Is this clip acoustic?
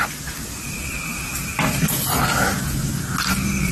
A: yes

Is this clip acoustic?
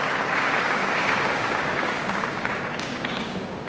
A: no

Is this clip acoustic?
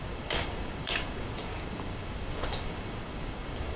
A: no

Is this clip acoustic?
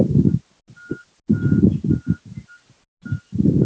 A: yes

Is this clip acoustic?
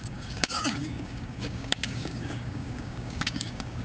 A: no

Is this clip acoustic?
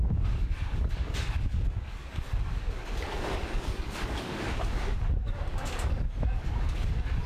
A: no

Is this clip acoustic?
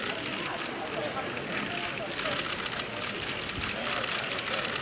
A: yes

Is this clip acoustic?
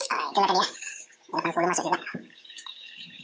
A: no